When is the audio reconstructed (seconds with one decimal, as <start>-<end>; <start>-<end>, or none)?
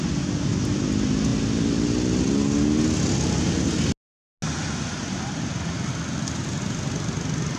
none